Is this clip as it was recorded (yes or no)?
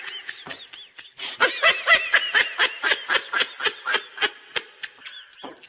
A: yes